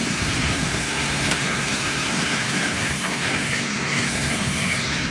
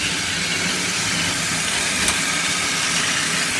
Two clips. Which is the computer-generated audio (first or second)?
first